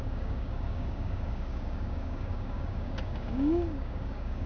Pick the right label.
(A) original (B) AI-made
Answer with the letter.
B